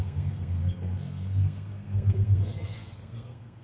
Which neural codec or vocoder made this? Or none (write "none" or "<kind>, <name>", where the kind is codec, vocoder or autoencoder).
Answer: codec, SNAC